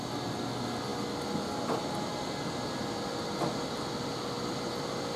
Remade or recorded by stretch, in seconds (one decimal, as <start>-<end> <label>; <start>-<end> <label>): 0.0-5.2 recorded